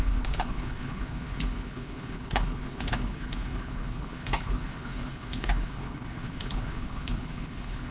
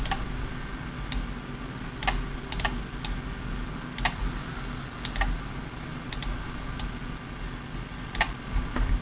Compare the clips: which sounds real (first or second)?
second